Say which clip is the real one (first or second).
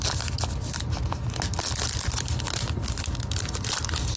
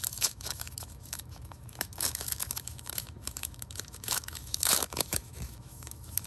first